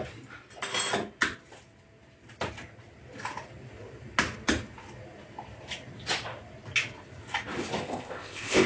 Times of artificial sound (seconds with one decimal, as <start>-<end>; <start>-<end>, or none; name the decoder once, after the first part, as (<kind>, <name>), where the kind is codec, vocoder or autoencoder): 7.8-8.7 (codec, ZipCodec)